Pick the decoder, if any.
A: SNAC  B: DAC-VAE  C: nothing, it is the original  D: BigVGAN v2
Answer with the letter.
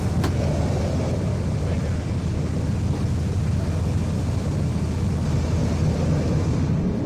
C